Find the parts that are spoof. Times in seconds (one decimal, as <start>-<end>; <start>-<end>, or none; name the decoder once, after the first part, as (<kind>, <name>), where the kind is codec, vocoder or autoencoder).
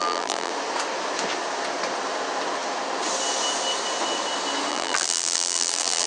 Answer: 0.0-0.5 (vocoder, BigVGAN v2); 4.7-6.1